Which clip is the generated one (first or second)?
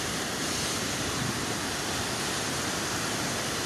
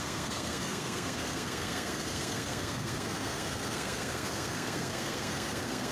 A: second